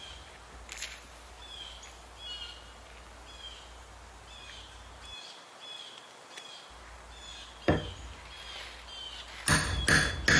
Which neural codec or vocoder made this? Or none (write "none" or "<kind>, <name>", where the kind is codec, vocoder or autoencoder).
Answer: none